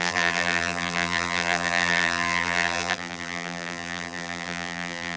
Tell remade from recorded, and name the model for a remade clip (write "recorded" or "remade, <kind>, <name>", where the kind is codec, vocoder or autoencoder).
remade, vocoder, BigVGAN v2